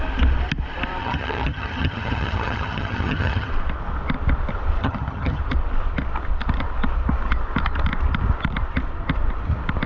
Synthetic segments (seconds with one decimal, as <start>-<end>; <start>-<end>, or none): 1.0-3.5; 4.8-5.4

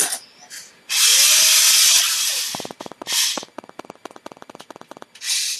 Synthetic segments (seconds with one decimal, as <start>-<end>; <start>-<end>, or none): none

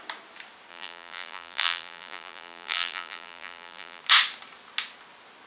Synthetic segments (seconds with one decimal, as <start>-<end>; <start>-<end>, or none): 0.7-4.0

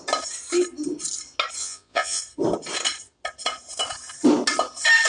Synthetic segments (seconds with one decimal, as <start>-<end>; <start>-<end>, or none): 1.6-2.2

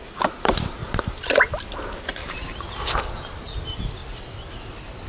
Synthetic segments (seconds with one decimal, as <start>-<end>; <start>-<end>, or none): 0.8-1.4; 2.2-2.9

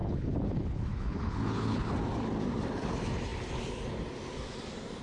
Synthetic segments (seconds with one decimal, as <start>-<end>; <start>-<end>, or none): 0.0-1.9